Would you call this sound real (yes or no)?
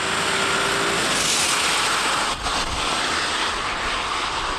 yes